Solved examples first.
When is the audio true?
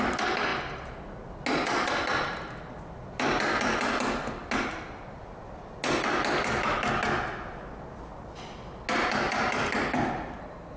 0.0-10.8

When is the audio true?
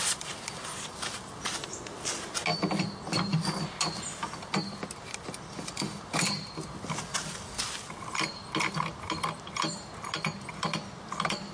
0.0-11.5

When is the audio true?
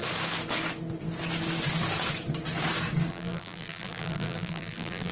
0.0-3.1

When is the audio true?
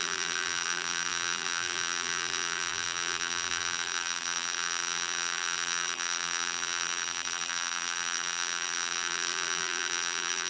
none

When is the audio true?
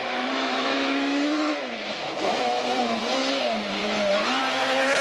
3.0-5.0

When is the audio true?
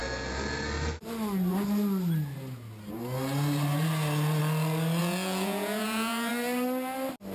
0.0-5.0; 6.3-7.3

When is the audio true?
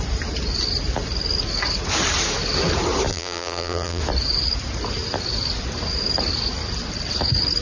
0.0-3.1; 4.0-7.6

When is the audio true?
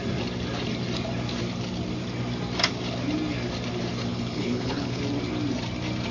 0.0-4.1; 5.0-6.1